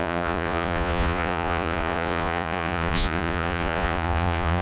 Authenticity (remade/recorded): remade